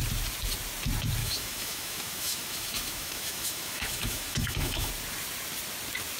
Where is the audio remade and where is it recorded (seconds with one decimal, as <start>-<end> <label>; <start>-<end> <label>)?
0.0-1.2 recorded; 1.2-4.9 remade; 4.9-6.2 recorded